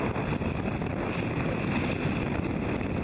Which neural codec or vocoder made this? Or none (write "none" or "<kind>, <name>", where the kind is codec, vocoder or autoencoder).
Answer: none